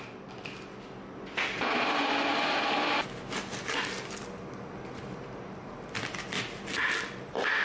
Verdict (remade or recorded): recorded